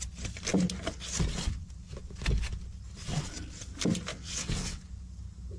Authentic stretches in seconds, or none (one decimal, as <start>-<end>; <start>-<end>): 0.0-4.1; 4.8-5.6